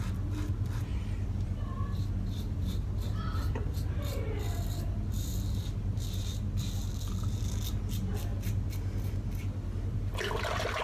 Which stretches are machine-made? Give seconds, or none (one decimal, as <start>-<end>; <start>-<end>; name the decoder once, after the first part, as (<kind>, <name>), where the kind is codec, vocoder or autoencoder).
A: 0.9-2.1 (vocoder, BigVGAN v2); 5.6-6.9